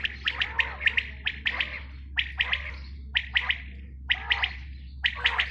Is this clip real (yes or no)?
yes